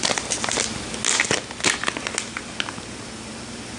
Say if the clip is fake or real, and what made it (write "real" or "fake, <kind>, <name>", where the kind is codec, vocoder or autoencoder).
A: real